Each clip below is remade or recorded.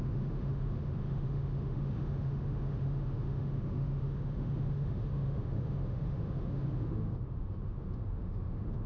remade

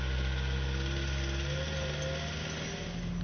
recorded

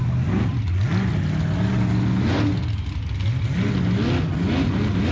recorded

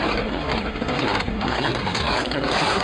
remade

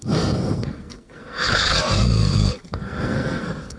remade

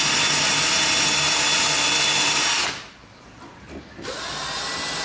recorded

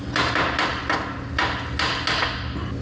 recorded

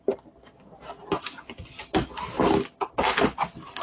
recorded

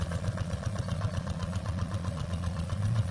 remade